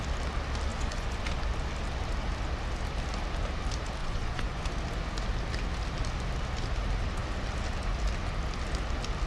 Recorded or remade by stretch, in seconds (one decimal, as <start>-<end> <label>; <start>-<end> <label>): 0.0-0.7 recorded; 0.7-1.4 remade; 1.4-4.0 recorded; 4.0-4.6 remade; 4.6-9.3 recorded